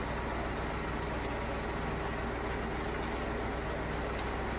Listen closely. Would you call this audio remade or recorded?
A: recorded